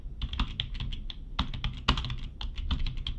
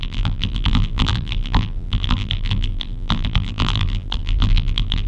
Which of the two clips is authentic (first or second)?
first